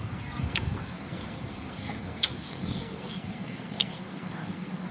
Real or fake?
fake